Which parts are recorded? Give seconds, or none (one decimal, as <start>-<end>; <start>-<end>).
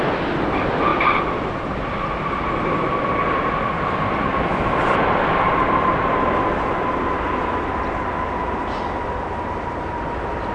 0.0-0.9; 2.5-3.0; 5.5-10.5